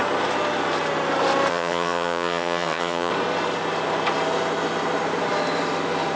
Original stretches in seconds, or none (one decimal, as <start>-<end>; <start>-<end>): 0.0-1.5; 3.1-6.2

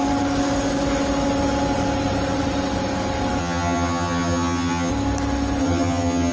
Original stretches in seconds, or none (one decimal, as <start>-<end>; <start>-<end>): 0.0-3.4; 4.9-5.6

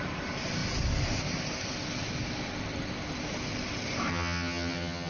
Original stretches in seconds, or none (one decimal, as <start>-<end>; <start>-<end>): 0.0-4.1

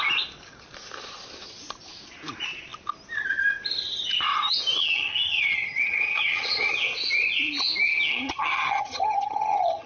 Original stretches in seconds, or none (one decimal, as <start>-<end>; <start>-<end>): 0.0-4.8; 6.7-7.9